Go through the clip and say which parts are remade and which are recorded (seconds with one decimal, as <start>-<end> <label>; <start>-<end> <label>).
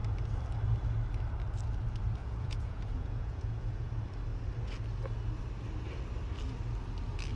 0.0-2.2 recorded; 2.2-3.9 remade; 3.9-7.4 recorded